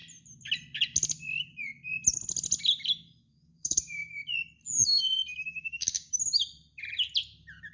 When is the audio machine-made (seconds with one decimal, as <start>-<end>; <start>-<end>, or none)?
3.2-4.1; 5.3-6.1